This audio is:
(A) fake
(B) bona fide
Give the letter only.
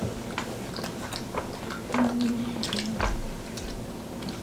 B